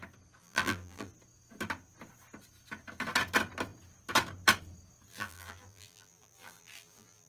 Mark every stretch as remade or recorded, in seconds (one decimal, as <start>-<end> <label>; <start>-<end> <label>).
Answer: 0.0-0.4 recorded; 0.4-1.1 remade; 1.1-5.1 recorded; 5.1-7.3 remade